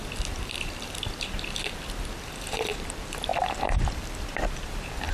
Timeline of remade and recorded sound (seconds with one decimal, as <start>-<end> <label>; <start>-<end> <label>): 0.0-2.5 recorded; 2.5-5.1 remade